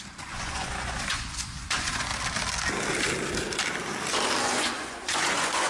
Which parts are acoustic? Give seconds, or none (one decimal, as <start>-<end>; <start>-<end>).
2.1-4.4